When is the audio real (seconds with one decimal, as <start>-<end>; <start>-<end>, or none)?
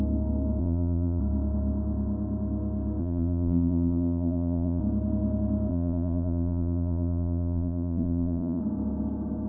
0.0-0.6; 1.2-3.0; 4.8-5.7; 8.6-9.5